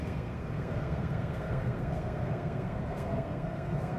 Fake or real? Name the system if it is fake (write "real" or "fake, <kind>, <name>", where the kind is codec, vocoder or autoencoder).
fake, codec, SNAC